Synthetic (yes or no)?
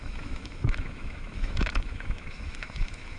yes